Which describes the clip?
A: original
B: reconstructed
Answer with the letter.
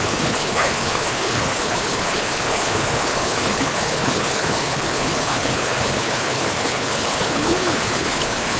B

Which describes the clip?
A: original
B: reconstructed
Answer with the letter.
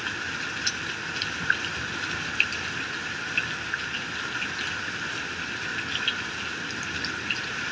A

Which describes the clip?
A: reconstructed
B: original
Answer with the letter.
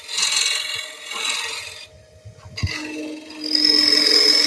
B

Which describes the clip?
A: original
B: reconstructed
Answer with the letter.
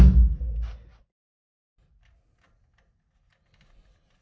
A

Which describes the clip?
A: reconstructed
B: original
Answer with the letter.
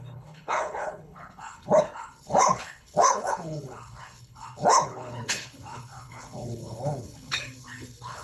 A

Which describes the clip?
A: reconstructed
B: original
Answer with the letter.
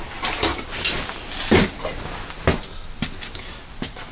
B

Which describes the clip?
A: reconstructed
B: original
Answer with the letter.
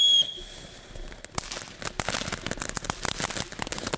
B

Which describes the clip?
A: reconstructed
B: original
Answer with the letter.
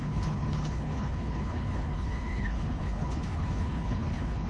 A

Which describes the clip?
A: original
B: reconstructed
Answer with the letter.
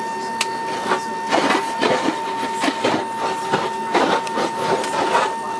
A